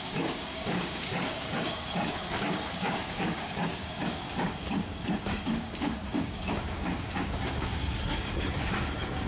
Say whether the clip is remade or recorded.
remade